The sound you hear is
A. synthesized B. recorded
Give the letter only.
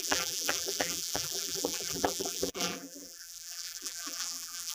A